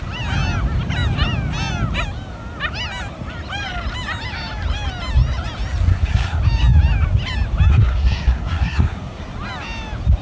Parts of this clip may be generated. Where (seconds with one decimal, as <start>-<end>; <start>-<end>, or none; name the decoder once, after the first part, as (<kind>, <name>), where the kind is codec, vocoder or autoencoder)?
5.9-6.4 (codec, SNAC); 7.7-9.2